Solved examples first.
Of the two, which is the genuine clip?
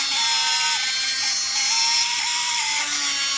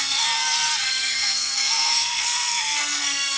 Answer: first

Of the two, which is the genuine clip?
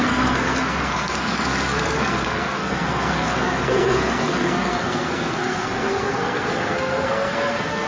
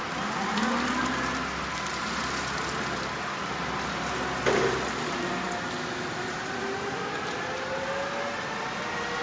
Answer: second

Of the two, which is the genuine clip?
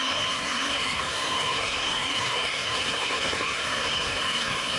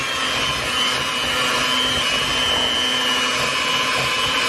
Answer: second